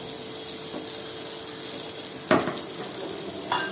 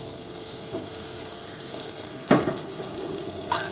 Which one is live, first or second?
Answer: first